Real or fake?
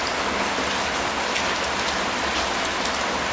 real